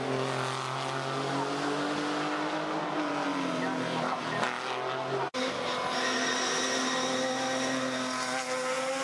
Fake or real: real